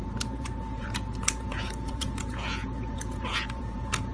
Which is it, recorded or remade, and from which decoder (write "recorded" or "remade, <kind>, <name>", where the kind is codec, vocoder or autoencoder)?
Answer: remade, vocoder, Vocos